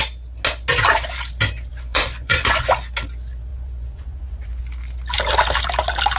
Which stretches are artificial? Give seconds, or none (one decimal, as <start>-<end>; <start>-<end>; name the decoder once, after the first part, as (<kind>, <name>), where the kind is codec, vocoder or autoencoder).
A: 1.7-2.6 (vocoder, Vocos); 3.5-4.6